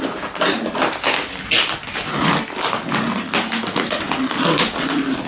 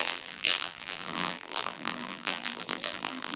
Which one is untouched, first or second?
first